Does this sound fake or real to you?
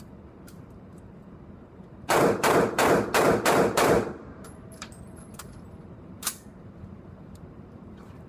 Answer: fake